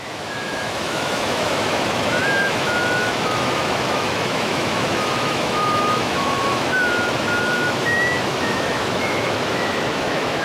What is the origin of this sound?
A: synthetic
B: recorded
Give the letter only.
A